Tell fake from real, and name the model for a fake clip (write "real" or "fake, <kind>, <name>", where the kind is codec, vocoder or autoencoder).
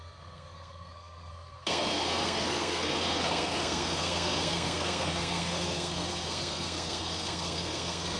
fake, codec, SNAC